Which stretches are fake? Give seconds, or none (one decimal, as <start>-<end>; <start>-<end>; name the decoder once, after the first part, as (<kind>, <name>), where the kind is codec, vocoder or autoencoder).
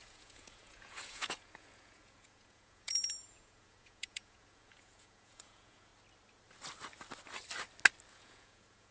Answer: 0.0-5.9 (vocoder, Vocos); 8.1-8.9